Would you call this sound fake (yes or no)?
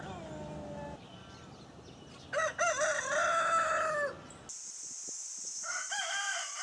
no